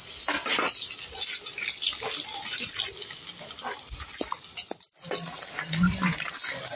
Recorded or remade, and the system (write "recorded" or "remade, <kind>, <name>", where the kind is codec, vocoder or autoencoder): recorded